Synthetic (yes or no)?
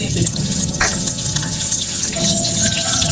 yes